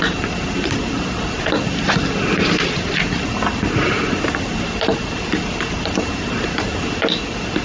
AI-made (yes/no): no